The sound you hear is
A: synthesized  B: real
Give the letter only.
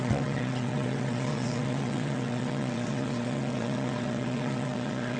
A